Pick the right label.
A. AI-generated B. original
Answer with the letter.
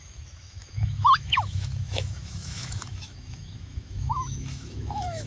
A